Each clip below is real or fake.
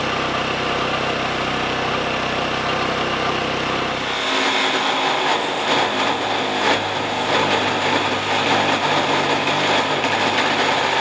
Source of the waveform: real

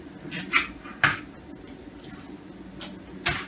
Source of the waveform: real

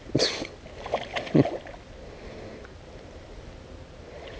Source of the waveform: real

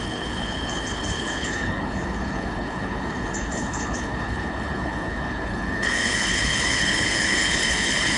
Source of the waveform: fake